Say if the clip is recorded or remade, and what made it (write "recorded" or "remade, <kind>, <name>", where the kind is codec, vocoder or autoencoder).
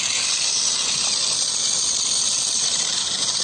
recorded